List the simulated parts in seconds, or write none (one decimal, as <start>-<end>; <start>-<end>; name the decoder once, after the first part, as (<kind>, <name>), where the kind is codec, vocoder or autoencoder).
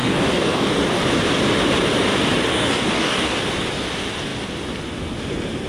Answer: 0.0-1.0 (codec, DAC); 2.5-3.4